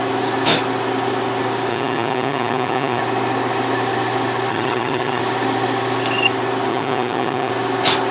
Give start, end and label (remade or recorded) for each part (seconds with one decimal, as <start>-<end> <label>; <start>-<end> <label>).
0.0-1.7 recorded; 1.7-3.0 remade; 3.0-4.5 recorded; 4.5-5.2 remade; 5.2-6.7 recorded; 6.7-7.5 remade; 7.5-8.1 recorded